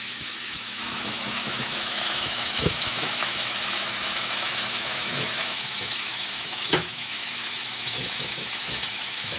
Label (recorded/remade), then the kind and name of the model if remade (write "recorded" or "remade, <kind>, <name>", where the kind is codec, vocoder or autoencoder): remade, autoencoder, DAC-VAE